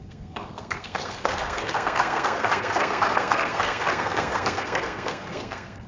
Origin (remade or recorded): remade